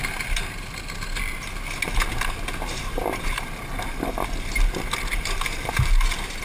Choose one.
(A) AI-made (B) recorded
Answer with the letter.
B